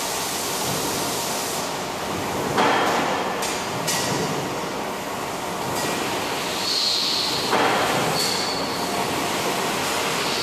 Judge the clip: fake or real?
real